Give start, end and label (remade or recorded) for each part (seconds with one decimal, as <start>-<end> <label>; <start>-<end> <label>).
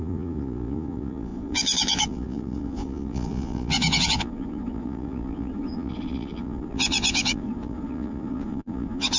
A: 0.0-9.2 remade